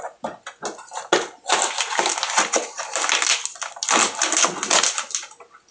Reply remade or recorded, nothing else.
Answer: recorded